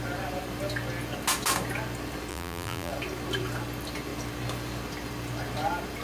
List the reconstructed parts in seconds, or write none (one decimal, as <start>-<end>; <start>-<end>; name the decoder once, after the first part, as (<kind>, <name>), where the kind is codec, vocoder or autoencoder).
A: 2.3-2.9 (vocoder, BigVGAN v2)